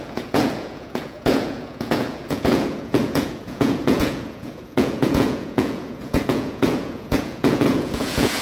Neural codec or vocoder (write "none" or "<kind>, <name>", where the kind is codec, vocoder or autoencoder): vocoder, Vocos